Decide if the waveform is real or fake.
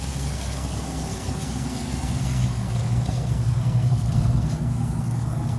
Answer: fake